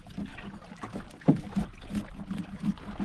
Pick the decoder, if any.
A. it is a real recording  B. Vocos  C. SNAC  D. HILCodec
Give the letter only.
A